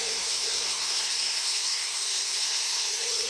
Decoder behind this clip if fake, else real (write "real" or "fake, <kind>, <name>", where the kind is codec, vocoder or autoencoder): fake, codec, SNAC